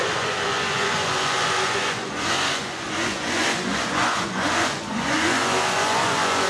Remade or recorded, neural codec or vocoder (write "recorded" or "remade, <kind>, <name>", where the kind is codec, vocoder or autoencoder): remade, vocoder, Vocos